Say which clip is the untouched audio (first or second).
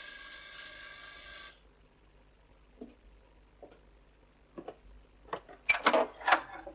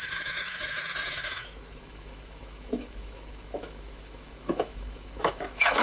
first